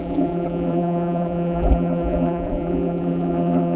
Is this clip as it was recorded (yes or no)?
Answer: no